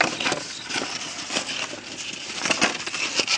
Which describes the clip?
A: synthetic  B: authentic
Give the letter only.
B